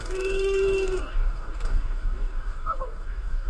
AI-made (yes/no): yes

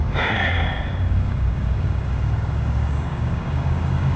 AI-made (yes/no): yes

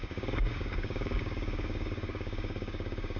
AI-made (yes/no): yes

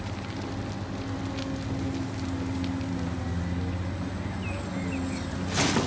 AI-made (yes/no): no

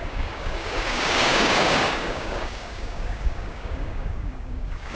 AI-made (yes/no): yes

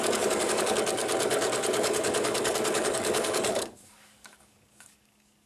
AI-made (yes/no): yes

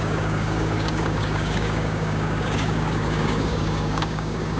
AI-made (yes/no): yes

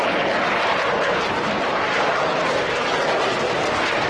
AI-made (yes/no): no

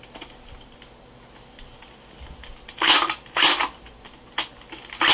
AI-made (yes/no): no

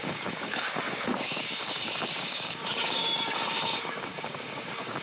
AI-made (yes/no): yes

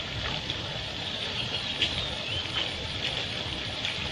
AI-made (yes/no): no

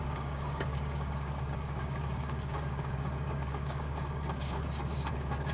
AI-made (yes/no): yes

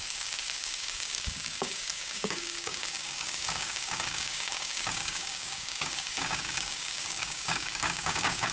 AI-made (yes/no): yes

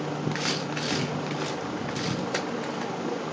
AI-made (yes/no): no